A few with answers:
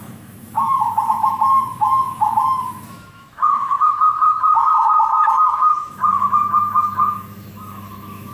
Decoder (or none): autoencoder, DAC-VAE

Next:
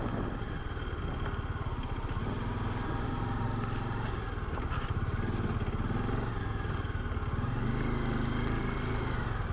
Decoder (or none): none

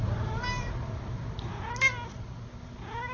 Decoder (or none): none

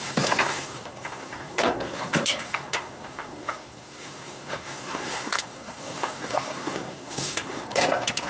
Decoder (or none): codec, SNAC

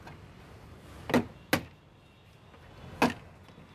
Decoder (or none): none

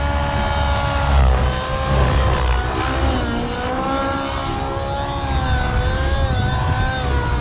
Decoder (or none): none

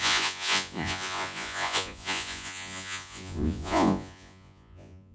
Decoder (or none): vocoder, Vocos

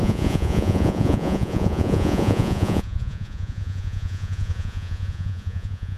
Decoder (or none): vocoder, Vocos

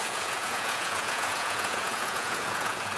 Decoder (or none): vocoder, Vocos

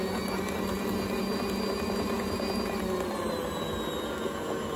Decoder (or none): none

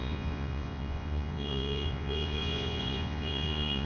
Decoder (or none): vocoder, Vocos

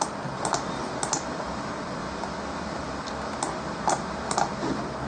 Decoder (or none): none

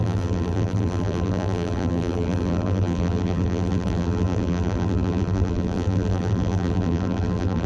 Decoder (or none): vocoder, BigVGAN v2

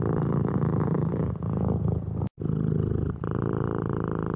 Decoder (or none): none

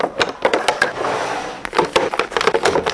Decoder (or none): none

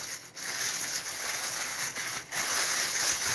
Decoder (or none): codec, HILCodec